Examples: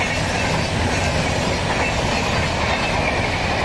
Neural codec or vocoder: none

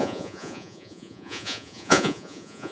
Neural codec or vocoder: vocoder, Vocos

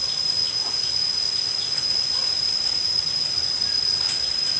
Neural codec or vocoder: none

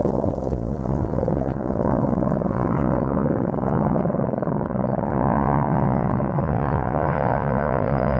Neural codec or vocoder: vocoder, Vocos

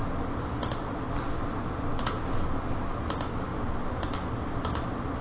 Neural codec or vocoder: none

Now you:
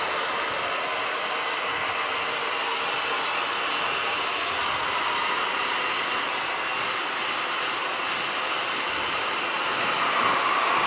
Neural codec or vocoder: none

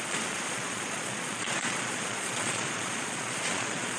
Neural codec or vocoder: vocoder, Vocos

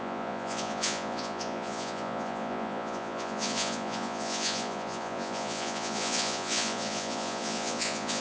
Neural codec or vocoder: vocoder, Vocos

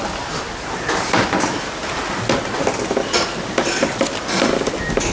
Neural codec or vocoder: none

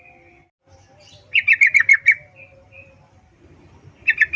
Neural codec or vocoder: none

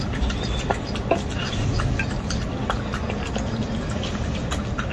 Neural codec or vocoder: none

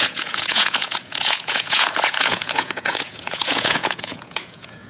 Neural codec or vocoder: vocoder, Vocos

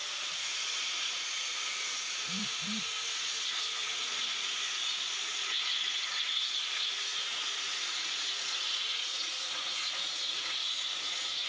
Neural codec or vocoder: vocoder, Vocos